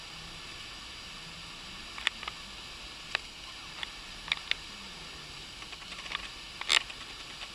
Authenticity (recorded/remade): recorded